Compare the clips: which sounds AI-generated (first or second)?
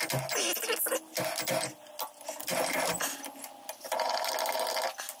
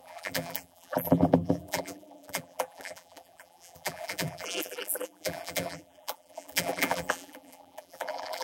second